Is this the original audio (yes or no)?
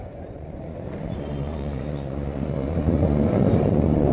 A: no